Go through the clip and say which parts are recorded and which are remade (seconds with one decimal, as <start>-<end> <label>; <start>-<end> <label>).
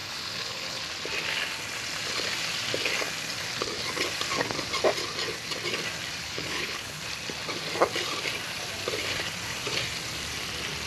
0.0-0.8 remade; 0.8-6.2 recorded; 6.2-7.0 remade; 7.0-10.9 recorded